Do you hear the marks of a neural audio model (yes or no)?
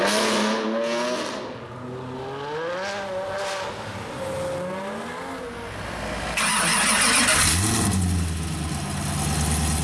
no